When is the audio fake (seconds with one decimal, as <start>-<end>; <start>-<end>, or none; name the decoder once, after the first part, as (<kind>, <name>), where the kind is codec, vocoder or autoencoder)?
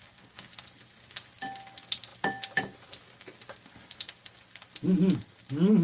none